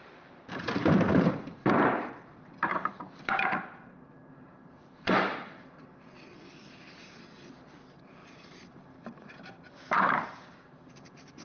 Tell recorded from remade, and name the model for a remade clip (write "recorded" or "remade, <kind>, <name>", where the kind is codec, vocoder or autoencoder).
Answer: remade, vocoder, BigVGAN v2